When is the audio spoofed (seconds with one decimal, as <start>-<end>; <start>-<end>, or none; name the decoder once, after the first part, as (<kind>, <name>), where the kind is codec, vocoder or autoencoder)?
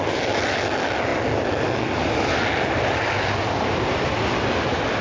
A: none